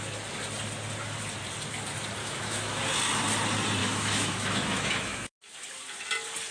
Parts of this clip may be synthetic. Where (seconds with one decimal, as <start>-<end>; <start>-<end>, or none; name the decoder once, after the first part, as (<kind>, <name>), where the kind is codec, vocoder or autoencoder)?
2.2-2.8 (autoencoder, DAC-VAE); 3.8-5.4